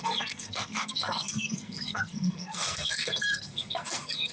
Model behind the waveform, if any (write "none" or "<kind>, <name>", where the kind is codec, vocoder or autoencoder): codec, SNAC